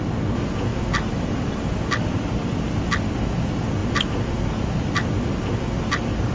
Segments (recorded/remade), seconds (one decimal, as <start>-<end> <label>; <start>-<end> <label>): 0.0-3.8 recorded; 3.8-5.8 remade; 5.8-6.3 recorded